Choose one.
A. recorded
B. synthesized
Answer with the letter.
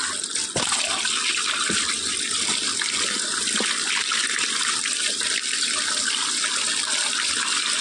A